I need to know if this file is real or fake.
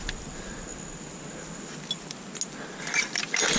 real